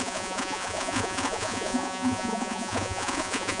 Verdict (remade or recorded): remade